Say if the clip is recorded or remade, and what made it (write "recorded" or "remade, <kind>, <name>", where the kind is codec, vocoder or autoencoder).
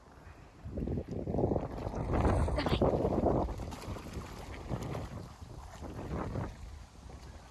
recorded